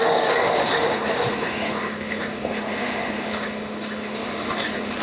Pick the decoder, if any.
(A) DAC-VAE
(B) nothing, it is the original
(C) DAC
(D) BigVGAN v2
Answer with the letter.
A